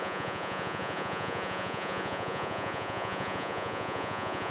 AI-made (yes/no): yes